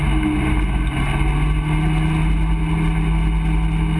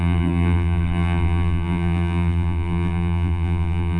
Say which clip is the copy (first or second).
second